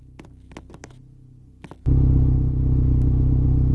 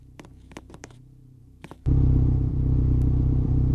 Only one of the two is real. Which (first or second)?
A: first